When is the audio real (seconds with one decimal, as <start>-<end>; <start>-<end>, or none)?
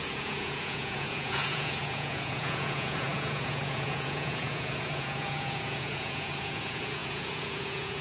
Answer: none